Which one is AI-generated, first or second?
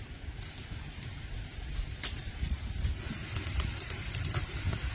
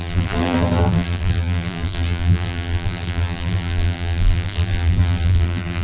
second